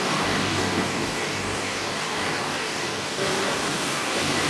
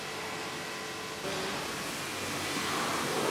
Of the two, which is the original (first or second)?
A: second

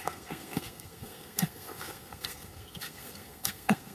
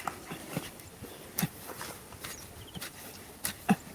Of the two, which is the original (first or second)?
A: second